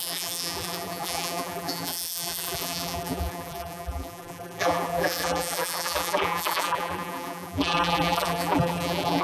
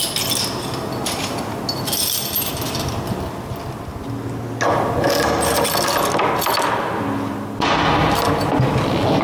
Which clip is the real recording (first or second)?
second